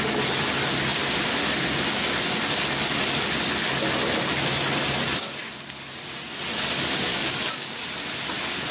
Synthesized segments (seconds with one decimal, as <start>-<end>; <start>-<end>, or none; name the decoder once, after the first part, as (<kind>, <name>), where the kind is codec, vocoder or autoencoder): 7.1-7.8 (codec, DAC)

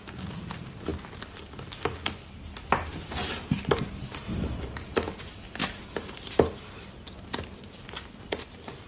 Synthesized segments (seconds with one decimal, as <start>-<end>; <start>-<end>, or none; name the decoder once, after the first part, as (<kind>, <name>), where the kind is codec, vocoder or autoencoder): none